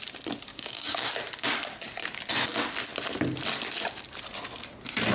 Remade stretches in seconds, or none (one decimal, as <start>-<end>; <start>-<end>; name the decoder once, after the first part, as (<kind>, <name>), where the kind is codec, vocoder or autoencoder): 0.5-1.1 (codec, DAC)